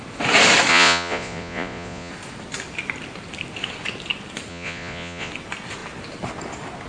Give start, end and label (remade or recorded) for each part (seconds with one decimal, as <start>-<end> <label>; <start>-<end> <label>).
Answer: 0.0-0.7 recorded; 0.7-2.1 remade; 2.1-4.5 recorded; 4.5-5.3 remade; 5.3-6.9 recorded